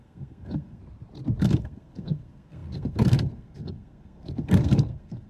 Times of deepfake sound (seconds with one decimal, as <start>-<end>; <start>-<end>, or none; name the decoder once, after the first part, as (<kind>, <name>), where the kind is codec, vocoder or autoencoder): 0.0-0.8 (codec, SNAC); 1.4-5.3